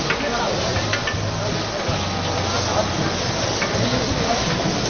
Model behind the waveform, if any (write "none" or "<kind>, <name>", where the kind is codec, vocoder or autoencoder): none